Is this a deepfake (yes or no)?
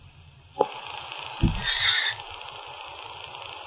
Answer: no